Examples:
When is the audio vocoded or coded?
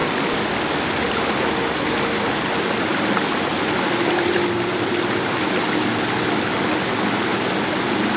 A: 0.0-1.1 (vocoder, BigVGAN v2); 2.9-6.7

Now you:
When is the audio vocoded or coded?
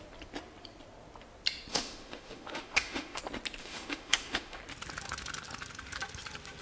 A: 1.7-3.2 (autoencoder, DAC-VAE); 3.6-4.6